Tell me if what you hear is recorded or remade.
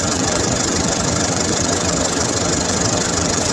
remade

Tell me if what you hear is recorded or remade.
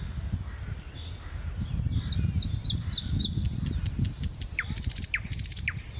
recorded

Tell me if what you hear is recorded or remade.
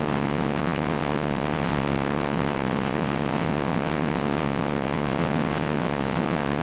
remade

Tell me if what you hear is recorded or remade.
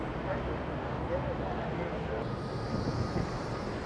recorded